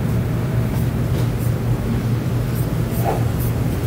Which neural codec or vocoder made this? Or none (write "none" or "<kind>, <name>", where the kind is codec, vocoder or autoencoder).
none